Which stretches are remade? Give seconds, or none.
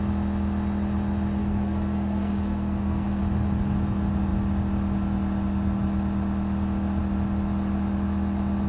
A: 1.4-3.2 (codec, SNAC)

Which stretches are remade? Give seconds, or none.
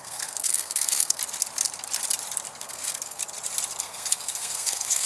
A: 0.0-1.2 (codec, SNAC); 2.6-3.2; 3.8-5.1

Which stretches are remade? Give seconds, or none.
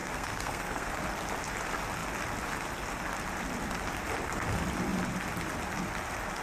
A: 0.0-0.9 (codec, SNAC)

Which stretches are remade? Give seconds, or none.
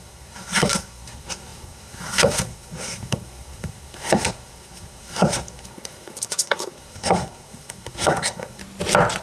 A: 0.0-8.6 (codec, SNAC)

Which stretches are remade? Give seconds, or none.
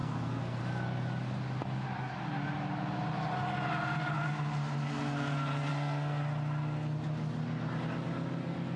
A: 0.0-0.6 (codec, SNAC); 5.7-6.2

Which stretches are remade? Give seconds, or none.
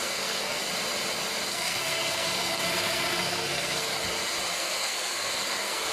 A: 0.0-0.6 (codec, SNAC); 1.5-3.9; 4.5-5.9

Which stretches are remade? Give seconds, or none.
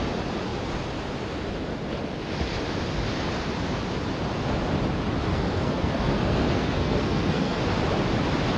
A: 5.3-7.6 (codec, SNAC)